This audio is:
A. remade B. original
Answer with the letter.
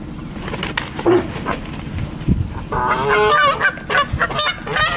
B